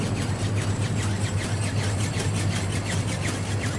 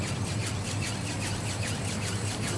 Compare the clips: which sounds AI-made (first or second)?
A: second